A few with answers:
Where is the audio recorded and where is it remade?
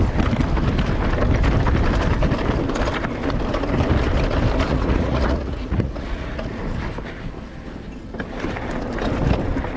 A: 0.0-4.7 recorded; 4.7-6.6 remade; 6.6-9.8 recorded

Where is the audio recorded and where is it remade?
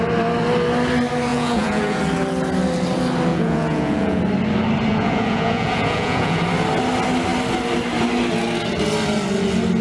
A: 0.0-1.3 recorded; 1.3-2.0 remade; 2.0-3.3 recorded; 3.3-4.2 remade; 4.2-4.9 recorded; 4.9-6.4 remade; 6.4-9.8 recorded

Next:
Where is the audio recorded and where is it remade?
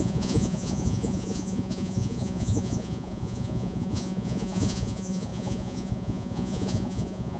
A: 0.0-7.4 remade